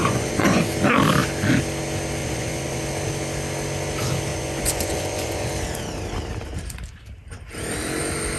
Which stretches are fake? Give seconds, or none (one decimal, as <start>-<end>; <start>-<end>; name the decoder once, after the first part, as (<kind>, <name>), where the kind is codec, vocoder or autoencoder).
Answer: 0.0-0.7 (vocoder, Vocos); 2.2-2.8; 4.3-5.5